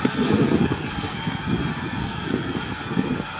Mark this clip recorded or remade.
remade